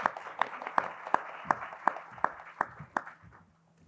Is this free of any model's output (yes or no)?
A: yes